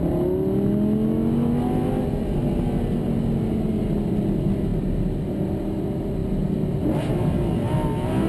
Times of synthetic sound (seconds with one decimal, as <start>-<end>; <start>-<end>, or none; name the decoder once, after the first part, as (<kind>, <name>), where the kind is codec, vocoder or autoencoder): none